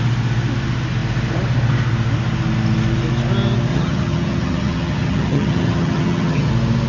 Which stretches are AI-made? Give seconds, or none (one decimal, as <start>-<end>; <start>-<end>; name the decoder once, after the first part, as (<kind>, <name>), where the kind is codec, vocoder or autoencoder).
3.7-6.5 (vocoder, HiFi-GAN)